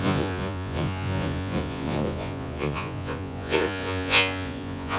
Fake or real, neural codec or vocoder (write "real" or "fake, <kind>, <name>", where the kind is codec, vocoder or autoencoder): fake, vocoder, Vocos